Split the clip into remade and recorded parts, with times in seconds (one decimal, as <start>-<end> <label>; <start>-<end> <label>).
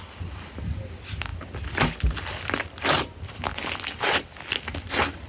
0.0-5.3 recorded